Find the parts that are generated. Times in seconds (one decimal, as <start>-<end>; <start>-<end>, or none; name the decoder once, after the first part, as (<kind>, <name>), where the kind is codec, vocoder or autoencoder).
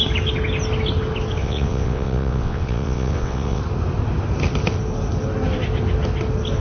1.4-3.6 (vocoder, WaveNeXt)